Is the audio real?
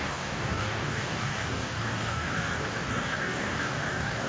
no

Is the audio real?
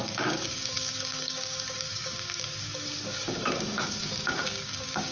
no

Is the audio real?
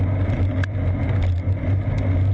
yes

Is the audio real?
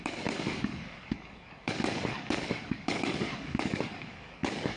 no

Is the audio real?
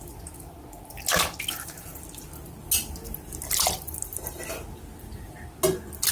yes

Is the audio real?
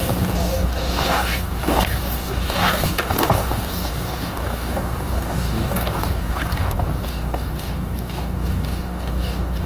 no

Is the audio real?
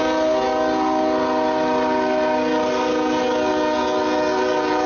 yes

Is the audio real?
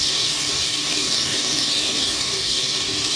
no